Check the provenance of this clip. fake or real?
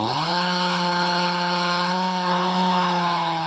fake